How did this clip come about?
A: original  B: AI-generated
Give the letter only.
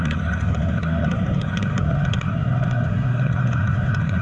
B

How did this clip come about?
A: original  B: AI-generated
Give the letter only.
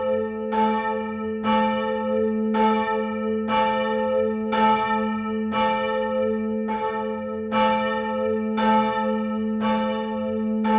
A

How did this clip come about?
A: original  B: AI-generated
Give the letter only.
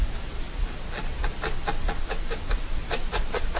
A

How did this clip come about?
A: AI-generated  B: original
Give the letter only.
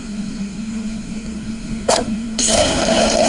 A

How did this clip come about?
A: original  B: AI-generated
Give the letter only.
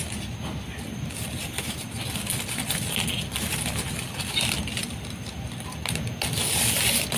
A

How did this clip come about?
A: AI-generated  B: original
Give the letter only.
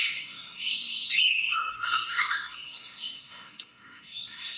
A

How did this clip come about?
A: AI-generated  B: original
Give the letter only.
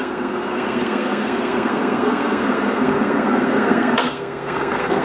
A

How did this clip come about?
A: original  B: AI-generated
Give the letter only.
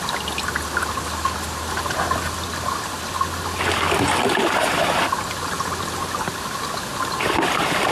A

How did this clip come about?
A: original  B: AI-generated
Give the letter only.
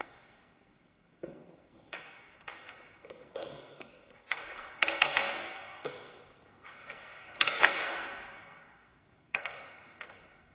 B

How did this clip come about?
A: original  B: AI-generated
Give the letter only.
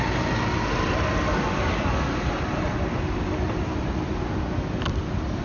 A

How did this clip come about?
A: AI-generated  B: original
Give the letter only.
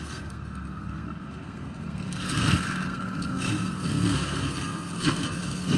A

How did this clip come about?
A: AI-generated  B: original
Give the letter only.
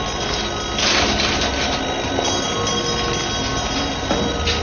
B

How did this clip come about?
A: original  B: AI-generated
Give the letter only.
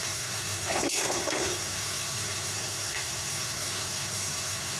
B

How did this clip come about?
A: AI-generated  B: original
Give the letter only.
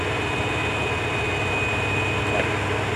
B